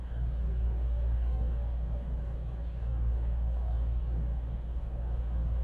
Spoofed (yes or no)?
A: yes